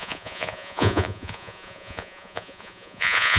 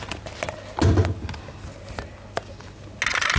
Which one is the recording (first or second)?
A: second